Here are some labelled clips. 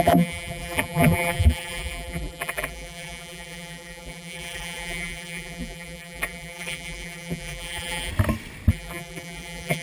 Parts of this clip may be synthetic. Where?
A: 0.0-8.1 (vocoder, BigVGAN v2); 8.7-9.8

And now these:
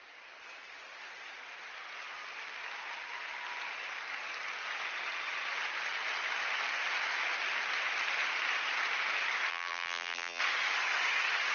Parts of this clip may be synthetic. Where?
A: 9.5-10.4 (vocoder, BigVGAN v2)

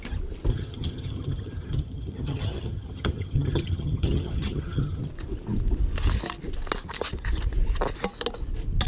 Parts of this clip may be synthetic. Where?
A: 0.5-5.0 (vocoder, HiFi-GAN)

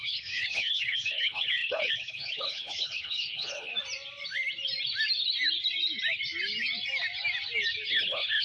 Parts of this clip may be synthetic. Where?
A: 0.0-3.7 (codec, HILCodec); 7.9-8.4

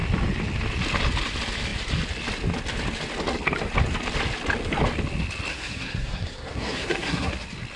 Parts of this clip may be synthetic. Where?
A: 5.5-7.3 (codec, SNAC)